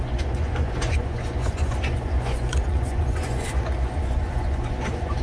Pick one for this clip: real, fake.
fake